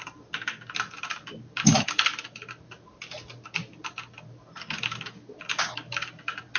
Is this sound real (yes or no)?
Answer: yes